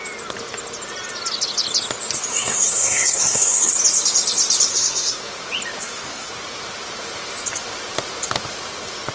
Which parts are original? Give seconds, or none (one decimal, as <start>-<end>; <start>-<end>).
0.0-2.3; 3.7-4.7; 5.2-5.8; 6.3-9.1